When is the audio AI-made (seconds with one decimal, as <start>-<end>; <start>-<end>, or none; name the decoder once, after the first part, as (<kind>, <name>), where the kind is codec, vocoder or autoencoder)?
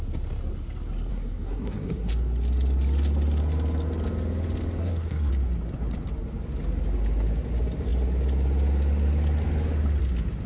1.1-2.1 (codec, SNAC); 4.8-5.3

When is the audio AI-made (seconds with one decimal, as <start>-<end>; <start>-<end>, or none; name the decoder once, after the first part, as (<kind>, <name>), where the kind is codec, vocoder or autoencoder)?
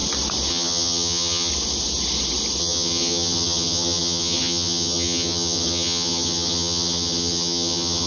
0.5-1.5 (vocoder, HiFi-GAN); 2.6-8.1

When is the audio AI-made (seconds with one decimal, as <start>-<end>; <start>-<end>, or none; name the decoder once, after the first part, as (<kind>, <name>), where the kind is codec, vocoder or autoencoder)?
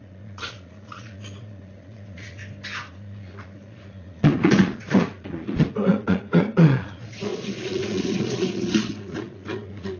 0.0-2.4 (vocoder, Vocos); 2.9-10.0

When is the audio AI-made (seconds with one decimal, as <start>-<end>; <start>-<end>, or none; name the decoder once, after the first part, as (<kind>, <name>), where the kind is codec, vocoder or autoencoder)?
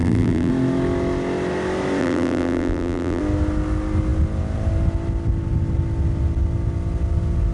0.0-0.5 (vocoder, BigVGAN v2); 2.0-3.2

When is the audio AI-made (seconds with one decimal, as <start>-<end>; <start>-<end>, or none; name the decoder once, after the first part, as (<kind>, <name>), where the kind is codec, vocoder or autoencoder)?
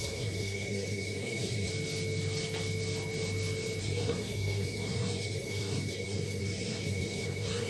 0.0-1.7 (codec, SNAC); 3.8-7.7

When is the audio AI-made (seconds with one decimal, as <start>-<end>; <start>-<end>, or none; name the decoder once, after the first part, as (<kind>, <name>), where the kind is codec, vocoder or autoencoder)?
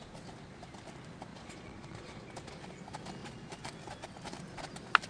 1.3-2.3 (vocoder, Vocos); 3.2-3.7